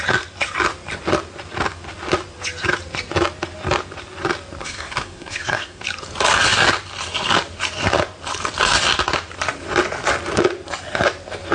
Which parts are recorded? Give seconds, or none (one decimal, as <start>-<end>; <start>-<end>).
0.0-4.6; 5.8-11.5